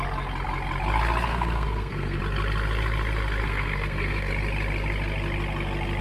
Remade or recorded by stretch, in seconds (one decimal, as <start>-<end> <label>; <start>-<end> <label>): 0.0-1.3 recorded; 1.3-2.2 remade; 2.2-3.4 recorded; 3.4-4.3 remade; 4.3-6.0 recorded